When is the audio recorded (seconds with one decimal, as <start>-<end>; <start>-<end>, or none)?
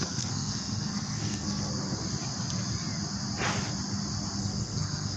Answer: 1.7-4.4